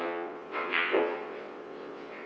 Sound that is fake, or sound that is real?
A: fake